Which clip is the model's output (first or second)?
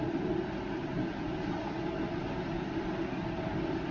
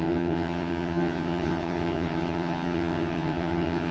second